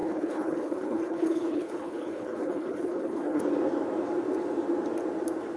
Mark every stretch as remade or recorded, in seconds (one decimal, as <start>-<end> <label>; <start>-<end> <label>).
0.0-3.4 remade; 3.4-5.6 recorded